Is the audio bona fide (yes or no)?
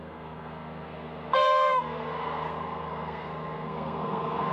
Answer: no